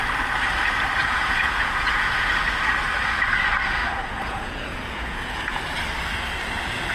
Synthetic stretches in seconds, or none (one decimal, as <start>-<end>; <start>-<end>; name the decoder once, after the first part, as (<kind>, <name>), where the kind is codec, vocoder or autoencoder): 1.0-2.3 (vocoder, Vocos); 3.8-5.6